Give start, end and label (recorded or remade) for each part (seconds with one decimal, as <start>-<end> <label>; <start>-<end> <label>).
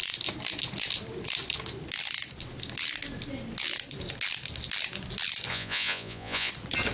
0.0-5.5 recorded; 5.5-6.5 remade; 6.5-6.9 recorded